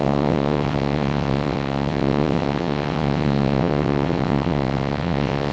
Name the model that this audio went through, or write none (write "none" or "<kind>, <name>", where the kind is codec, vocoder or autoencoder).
vocoder, WaveNeXt